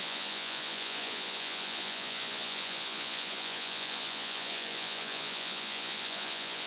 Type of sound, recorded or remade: remade